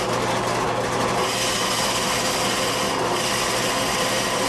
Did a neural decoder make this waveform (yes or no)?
no